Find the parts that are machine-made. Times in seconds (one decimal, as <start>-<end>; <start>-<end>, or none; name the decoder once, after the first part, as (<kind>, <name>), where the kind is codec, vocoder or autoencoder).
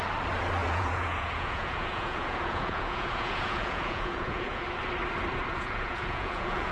0.6-4.6 (vocoder, Vocos); 5.5-6.7